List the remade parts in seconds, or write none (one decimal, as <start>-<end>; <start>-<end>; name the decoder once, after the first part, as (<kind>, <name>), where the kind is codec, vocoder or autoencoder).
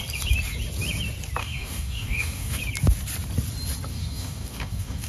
1.4-2.6 (codec, DAC); 3.9-5.1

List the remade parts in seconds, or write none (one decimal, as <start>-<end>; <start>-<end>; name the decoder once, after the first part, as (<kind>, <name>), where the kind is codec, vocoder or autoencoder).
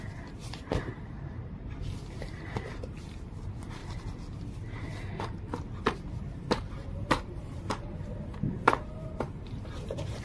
0.0-3.8 (vocoder, BigVGAN v2); 5.8-10.2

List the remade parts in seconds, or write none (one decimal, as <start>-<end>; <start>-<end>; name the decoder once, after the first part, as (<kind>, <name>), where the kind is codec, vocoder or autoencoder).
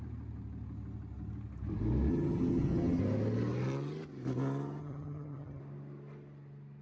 2.1-3.0 (vocoder, HiFi-GAN); 4.8-5.6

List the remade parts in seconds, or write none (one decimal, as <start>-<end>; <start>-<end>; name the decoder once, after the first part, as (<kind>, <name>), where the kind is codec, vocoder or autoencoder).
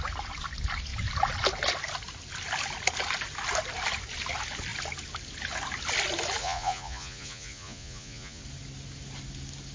6.4-8.4 (vocoder, Vocos)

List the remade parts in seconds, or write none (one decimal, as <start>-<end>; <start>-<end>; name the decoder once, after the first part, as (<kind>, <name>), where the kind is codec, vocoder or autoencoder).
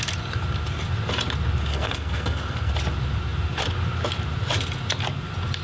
1.7-2.7 (codec, SNAC)